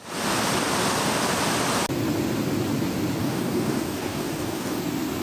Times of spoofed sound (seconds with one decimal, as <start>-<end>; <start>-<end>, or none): 3.2-4.8